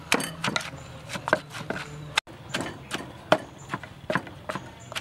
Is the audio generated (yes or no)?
no